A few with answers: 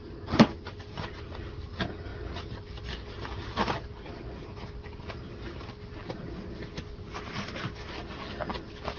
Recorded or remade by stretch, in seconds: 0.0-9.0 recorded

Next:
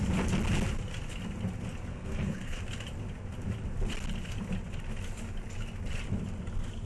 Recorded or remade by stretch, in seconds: 0.0-1.9 recorded; 1.9-2.6 remade; 2.6-6.9 recorded

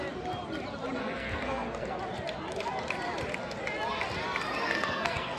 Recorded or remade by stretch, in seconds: 0.0-1.0 recorded; 1.0-2.0 remade; 2.0-4.6 recorded; 4.6-5.4 remade

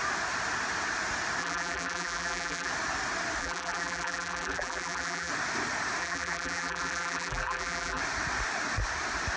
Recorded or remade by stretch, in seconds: 0.0-1.4 recorded; 1.4-2.7 remade; 2.7-3.4 recorded; 3.4-5.3 remade; 5.3-6.0 recorded; 6.0-8.0 remade; 8.0-9.4 recorded

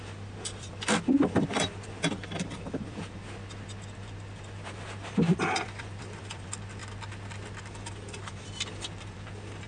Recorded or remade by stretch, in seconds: 0.0-6.8 remade; 6.8-7.6 recorded; 7.6-9.7 remade